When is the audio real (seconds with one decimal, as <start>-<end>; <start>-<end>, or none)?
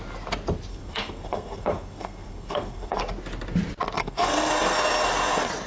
0.0-0.7; 3.0-4.0; 4.5-5.7